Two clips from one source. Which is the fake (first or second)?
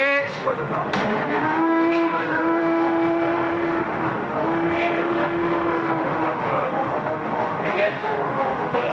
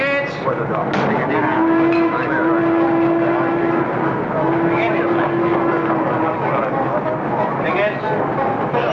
first